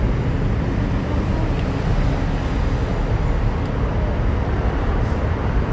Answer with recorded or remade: recorded